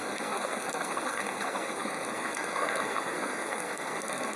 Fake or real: fake